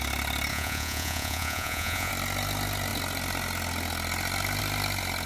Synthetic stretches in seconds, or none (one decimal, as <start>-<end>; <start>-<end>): 0.5-2.1